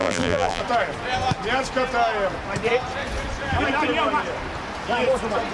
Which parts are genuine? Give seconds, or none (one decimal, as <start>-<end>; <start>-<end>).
0.6-5.5